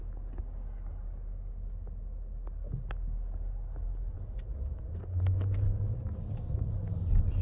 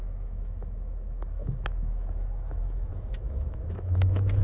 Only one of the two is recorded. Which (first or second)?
first